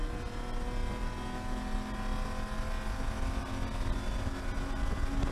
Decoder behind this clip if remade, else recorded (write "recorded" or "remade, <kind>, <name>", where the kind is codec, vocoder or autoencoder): recorded